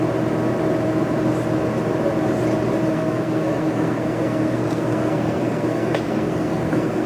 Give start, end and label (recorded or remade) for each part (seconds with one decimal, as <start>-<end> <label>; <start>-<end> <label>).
0.0-2.9 recorded; 2.9-7.1 remade